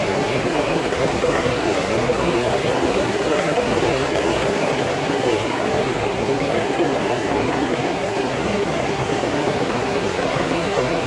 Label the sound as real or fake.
fake